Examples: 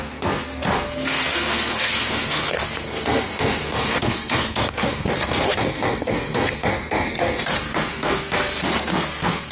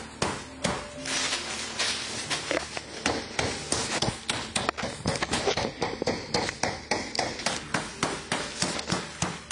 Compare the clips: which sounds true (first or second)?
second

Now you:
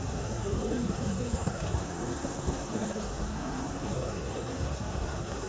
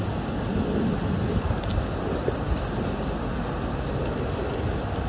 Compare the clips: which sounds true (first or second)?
second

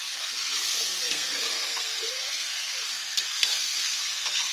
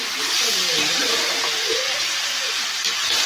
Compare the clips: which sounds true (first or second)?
second